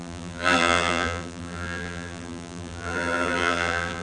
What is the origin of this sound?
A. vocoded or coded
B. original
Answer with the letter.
A